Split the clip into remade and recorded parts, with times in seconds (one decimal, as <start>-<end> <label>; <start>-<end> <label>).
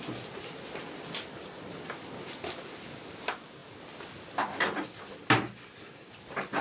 0.0-6.6 recorded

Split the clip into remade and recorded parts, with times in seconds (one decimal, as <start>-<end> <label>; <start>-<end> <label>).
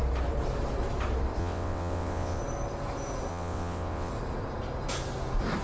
0.0-1.4 recorded; 1.4-2.4 remade; 2.4-3.3 recorded; 3.3-4.1 remade; 4.1-5.6 recorded